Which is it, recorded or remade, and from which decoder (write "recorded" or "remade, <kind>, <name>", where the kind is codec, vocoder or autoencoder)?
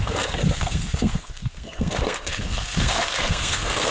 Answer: remade, codec, SNAC